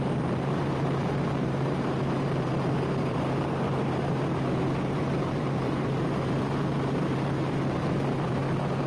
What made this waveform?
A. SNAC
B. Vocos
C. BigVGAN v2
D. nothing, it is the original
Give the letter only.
C